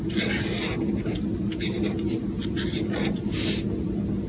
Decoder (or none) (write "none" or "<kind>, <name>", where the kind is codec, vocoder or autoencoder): none